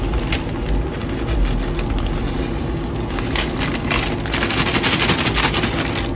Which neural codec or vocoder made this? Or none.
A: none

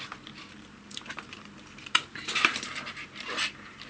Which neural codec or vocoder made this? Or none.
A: vocoder, BigVGAN v2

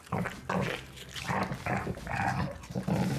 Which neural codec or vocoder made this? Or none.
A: none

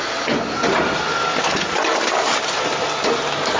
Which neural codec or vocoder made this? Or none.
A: none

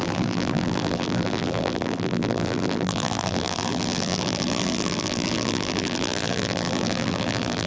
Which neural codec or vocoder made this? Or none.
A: vocoder, BigVGAN v2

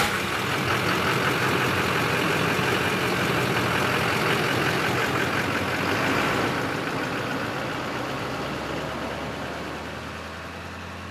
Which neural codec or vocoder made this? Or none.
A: none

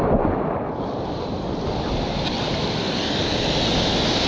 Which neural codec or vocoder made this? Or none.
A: none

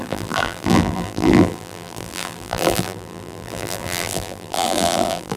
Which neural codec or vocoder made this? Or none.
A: vocoder, BigVGAN v2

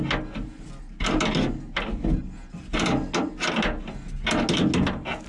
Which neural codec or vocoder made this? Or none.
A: none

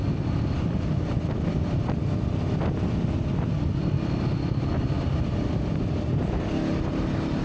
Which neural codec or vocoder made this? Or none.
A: none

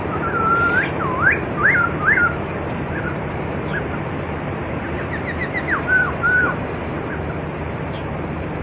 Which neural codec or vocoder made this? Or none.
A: vocoder, BigVGAN v2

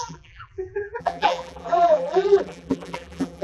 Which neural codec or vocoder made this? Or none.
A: vocoder, BigVGAN v2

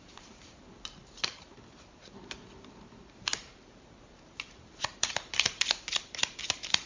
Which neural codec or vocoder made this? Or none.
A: vocoder, BigVGAN v2